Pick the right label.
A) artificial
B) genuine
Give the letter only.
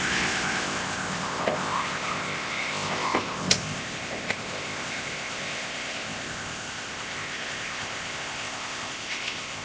A